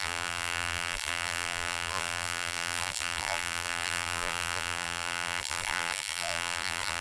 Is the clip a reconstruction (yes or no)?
yes